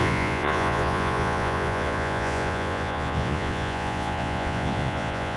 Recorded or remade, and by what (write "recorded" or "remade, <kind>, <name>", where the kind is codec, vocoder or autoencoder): remade, vocoder, Vocos